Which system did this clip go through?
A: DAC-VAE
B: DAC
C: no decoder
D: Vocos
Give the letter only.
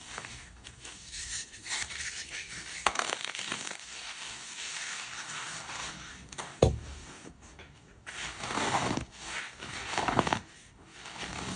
B